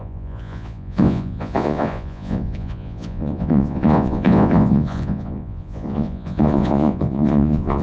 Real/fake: fake